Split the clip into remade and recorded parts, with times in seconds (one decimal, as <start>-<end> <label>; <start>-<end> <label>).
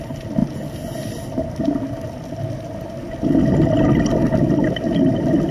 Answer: 0.0-5.5 recorded